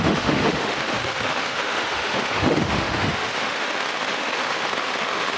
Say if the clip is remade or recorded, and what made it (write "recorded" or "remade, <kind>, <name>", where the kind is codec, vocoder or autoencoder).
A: remade, autoencoder, DAC-VAE